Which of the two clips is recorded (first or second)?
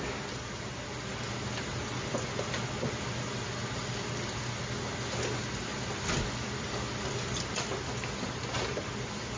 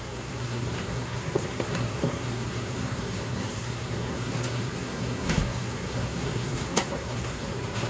first